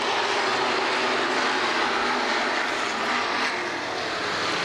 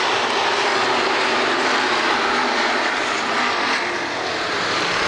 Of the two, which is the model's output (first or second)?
second